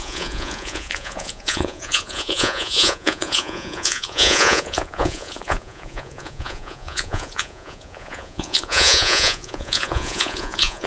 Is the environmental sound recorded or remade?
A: remade